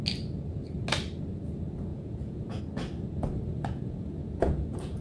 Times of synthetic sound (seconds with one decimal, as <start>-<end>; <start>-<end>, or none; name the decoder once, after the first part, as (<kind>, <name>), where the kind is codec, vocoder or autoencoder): 1.9-2.6 (vocoder, Vocos); 3.5-5.0